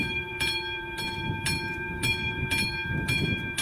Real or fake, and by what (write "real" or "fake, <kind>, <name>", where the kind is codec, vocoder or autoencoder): fake, vocoder, BigVGAN v2